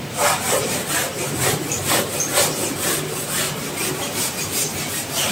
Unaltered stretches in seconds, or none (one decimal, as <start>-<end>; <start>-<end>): 0.0-1.0; 2.0-5.3